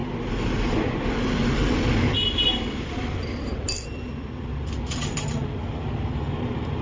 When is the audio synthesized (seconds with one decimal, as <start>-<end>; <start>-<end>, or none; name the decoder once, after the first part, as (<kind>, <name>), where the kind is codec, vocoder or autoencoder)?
none